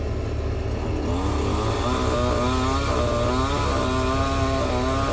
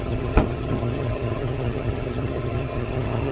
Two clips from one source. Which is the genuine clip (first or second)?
first